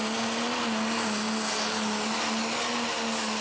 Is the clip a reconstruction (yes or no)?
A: no